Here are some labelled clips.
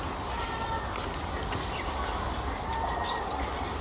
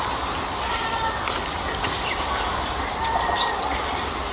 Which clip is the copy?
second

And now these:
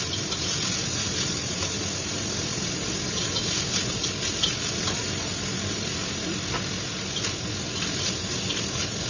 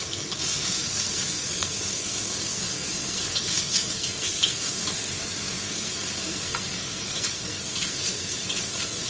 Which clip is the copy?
second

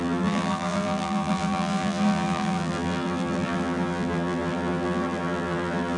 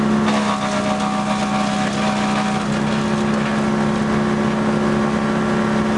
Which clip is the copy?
first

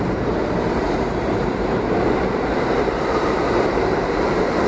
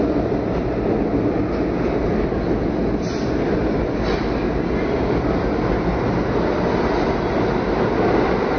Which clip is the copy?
first